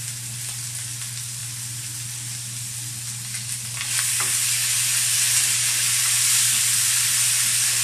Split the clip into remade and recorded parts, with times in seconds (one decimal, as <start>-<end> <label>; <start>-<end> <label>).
0.0-7.8 recorded